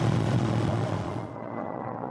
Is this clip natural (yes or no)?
no